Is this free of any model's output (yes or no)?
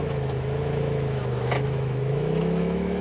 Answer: no